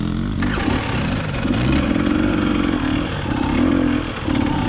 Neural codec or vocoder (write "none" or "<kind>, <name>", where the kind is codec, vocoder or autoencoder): none